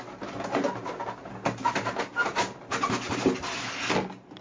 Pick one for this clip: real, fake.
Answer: real